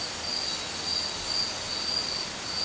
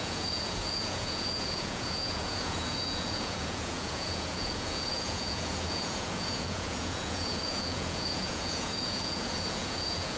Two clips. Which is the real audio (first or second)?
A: first